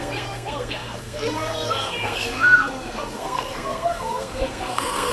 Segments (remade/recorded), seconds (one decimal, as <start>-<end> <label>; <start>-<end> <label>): 0.0-5.1 remade